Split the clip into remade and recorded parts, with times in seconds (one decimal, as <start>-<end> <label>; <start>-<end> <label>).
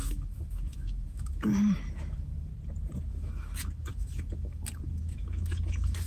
0.0-2.5 remade; 2.5-3.1 recorded; 3.1-6.1 remade